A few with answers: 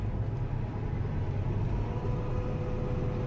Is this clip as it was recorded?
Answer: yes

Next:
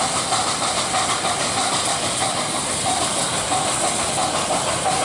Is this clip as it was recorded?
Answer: yes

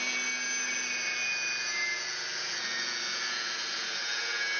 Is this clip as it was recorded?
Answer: yes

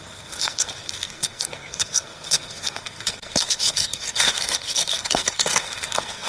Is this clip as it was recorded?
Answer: no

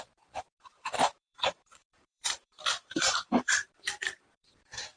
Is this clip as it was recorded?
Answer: no